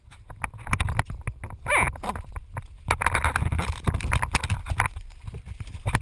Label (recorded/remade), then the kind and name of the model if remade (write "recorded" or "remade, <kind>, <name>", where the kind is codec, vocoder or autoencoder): recorded